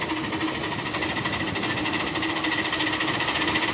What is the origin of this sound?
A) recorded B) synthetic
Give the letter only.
A